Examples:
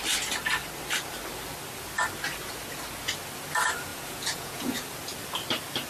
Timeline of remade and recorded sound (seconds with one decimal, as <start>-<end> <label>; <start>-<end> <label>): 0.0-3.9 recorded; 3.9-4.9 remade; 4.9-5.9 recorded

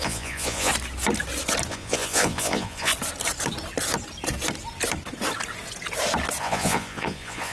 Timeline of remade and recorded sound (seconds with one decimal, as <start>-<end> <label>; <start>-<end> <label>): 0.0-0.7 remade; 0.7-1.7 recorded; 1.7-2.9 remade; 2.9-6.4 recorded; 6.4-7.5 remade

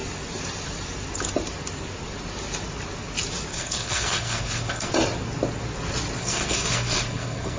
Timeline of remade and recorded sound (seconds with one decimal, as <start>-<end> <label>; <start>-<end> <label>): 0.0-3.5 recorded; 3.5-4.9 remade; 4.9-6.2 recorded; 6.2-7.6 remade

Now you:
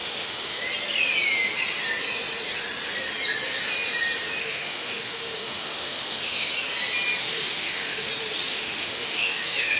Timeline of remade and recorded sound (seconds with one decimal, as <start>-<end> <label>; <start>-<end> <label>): 0.0-0.6 remade; 0.6-4.4 recorded; 4.4-6.5 remade; 6.5-7.2 recorded; 7.2-8.1 remade; 8.1-8.5 recorded; 8.5-9.8 remade

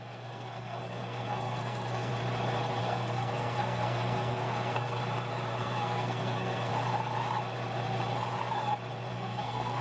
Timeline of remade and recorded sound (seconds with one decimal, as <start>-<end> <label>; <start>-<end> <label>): 0.0-2.1 remade; 2.1-2.8 recorded; 2.8-5.0 remade; 5.0-5.6 recorded; 5.6-6.7 remade; 6.7-9.1 recorded; 9.1-9.8 remade